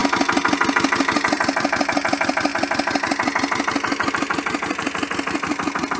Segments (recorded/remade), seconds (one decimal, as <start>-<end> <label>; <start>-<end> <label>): 0.0-0.7 recorded; 0.7-2.5 remade; 2.5-4.1 recorded; 4.1-6.0 remade